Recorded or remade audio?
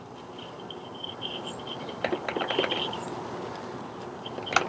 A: recorded